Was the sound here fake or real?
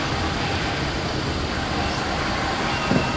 fake